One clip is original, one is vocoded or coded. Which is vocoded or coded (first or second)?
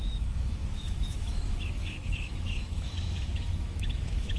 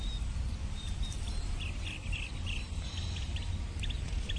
first